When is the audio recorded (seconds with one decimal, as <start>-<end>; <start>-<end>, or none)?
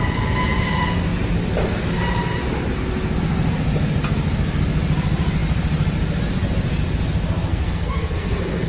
0.0-7.5